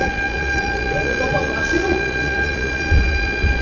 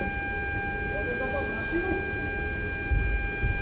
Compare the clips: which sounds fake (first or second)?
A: first